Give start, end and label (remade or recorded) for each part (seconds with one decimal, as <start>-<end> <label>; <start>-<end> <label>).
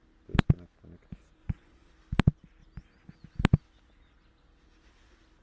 0.0-1.4 recorded; 1.4-1.9 remade; 1.9-5.4 recorded